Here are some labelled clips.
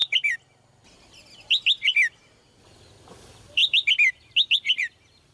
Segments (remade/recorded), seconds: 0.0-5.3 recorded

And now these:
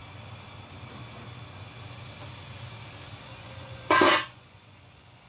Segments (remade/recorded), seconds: 0.0-3.2 recorded; 3.2-5.3 remade

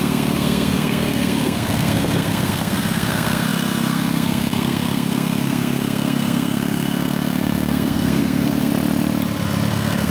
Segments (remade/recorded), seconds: 0.0-8.7 remade; 8.7-9.7 recorded; 9.7-10.1 remade

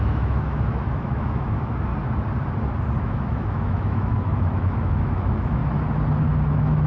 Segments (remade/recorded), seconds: 0.0-1.9 remade; 1.9-3.0 recorded; 3.0-5.6 remade; 5.6-6.5 recorded; 6.5-6.9 remade